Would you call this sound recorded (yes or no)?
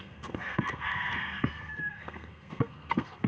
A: no